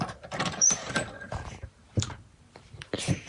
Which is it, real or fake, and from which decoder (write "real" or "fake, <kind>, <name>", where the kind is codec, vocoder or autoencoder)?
fake, vocoder, BigVGAN v2